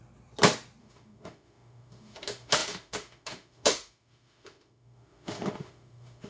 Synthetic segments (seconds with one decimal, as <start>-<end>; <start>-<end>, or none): 0.8-6.3